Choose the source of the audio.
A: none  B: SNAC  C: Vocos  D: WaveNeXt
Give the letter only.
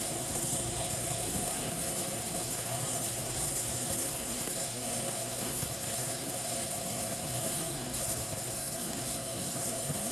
B